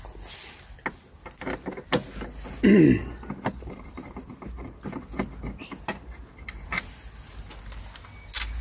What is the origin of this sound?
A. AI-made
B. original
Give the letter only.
B